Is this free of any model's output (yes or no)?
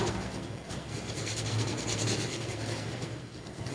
no